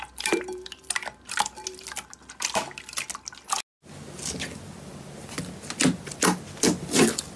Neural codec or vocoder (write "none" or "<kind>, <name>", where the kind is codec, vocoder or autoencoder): none